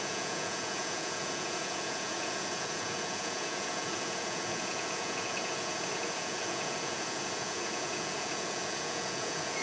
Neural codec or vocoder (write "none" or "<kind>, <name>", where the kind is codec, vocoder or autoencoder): vocoder, Vocos